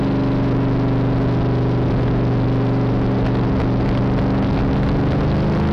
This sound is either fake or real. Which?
real